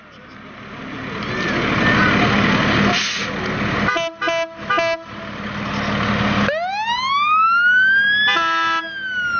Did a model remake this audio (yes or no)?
no